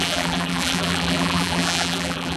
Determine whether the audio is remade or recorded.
remade